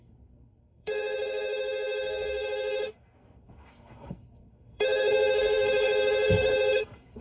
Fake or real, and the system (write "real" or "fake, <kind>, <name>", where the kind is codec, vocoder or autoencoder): fake, codec, SNAC